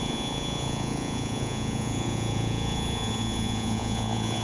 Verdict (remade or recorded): remade